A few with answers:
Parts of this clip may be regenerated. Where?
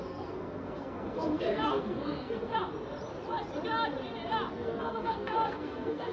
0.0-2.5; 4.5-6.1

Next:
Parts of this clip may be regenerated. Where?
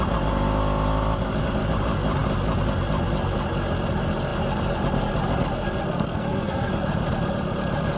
5.9-6.7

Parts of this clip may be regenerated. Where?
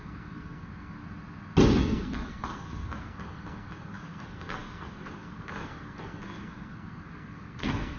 0.0-1.0; 1.8-8.0